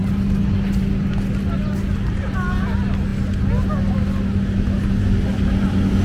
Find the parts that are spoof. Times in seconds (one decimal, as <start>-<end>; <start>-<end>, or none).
none